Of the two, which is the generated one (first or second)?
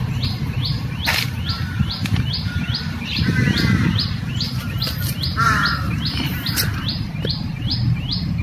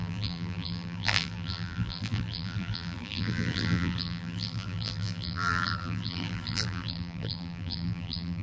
second